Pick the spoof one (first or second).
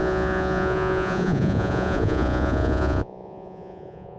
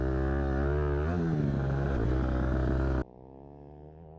first